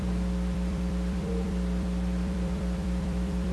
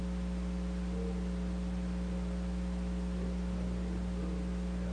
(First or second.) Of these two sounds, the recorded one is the second